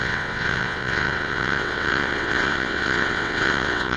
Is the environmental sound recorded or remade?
remade